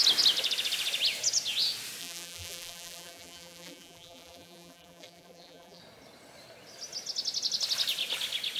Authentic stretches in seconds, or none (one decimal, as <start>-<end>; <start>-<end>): 0.0-2.0; 5.8-8.6